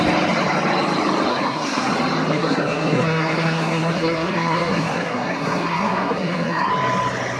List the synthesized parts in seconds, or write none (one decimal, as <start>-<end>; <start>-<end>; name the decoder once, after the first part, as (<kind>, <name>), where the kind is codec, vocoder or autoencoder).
1.3-1.9 (codec, SNAC); 2.3-6.7